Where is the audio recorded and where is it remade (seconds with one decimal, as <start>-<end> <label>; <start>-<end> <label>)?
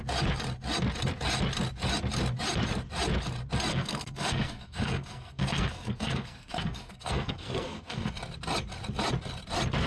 0.0-3.7 recorded; 3.7-8.1 remade; 8.1-9.9 recorded